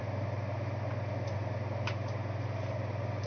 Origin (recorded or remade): recorded